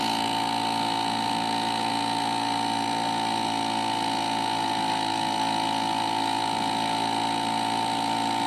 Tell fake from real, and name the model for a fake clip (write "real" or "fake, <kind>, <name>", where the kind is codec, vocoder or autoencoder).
real